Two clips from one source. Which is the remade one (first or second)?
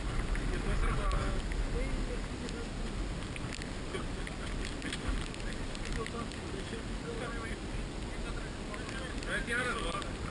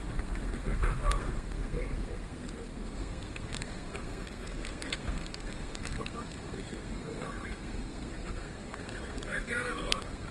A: second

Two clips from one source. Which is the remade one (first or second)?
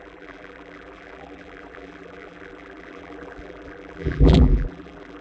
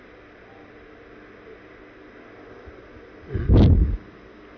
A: first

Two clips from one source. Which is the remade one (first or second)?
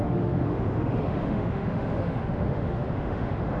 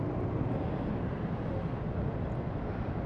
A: first